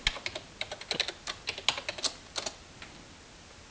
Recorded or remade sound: recorded